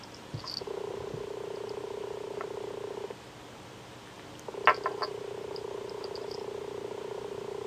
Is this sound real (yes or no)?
yes